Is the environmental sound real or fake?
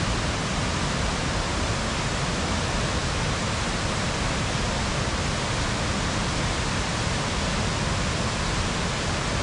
real